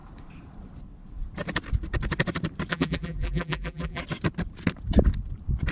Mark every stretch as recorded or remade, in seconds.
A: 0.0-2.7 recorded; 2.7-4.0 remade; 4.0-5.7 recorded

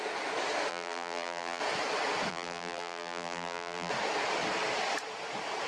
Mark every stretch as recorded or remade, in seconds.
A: 0.0-0.7 recorded; 0.7-1.6 remade; 1.6-2.3 recorded; 2.3-3.9 remade; 3.9-5.7 recorded

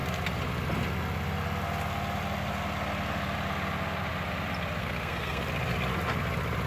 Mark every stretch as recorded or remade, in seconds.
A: 0.0-4.8 recorded; 4.8-5.4 remade; 5.4-6.7 recorded

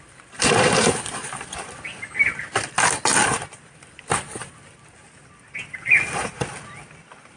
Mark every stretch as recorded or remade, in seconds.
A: 0.0-7.4 recorded

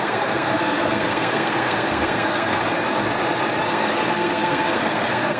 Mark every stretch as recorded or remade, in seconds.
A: 0.0-2.6 remade; 2.6-3.7 recorded; 3.7-5.4 remade

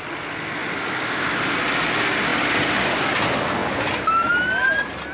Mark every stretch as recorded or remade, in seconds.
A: 0.0-0.6 recorded; 0.6-1.2 remade; 1.2-5.1 recorded

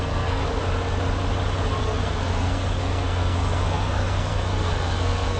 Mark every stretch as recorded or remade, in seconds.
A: 0.0-0.4 remade; 0.4-1.8 recorded; 1.8-5.4 remade